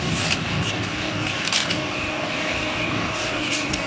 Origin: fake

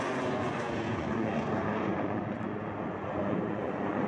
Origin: fake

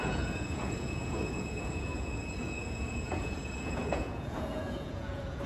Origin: fake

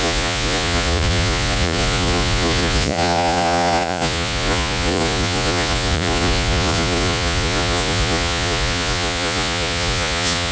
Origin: fake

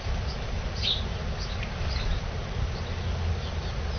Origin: real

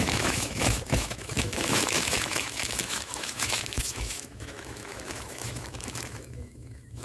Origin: fake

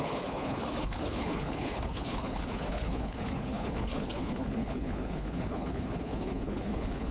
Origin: fake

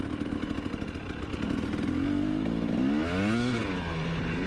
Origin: real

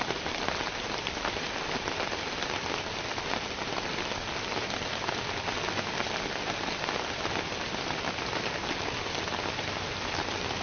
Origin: real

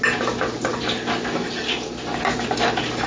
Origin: real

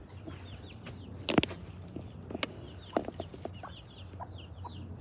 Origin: real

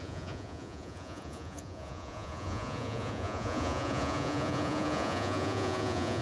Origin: fake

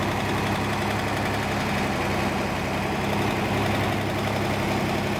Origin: real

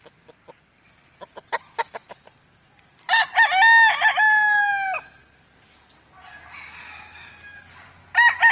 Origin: real